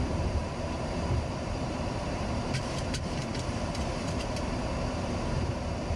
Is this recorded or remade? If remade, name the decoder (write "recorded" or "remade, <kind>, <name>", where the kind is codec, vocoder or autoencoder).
remade, vocoder, BigVGAN v2